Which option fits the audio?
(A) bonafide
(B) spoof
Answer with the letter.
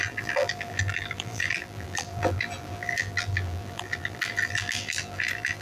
B